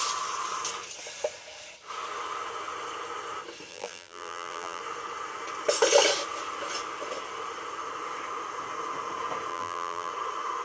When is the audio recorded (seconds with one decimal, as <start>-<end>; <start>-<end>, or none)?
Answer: 0.0-3.7; 4.8-9.5; 10.1-10.6